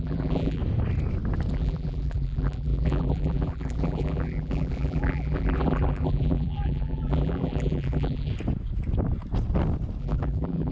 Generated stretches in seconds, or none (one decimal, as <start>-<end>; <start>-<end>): 0.0-0.6; 1.5-8.3; 10.0-10.7